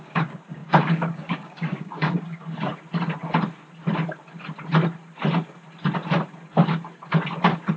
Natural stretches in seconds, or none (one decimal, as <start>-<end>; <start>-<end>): 2.7-7.8